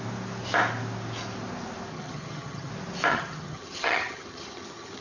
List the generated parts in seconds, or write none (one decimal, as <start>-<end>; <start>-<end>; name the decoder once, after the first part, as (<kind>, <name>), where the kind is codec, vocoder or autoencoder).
1.9-2.7 (vocoder, HiFi-GAN); 3.1-5.0